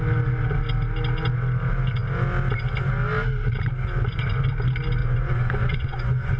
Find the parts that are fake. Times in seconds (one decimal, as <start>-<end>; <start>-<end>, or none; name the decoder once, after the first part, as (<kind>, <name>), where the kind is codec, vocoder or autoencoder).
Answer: 5.0-6.4 (vocoder, Vocos)